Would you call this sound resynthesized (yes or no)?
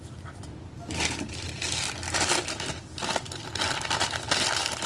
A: no